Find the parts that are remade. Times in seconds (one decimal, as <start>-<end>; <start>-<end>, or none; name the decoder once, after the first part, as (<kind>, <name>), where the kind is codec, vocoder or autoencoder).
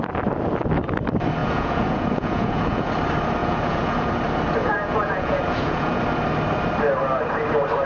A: 1.4-2.9 (vocoder, Vocos); 3.4-4.1; 4.6-6.0